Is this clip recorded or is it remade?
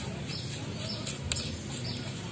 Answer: recorded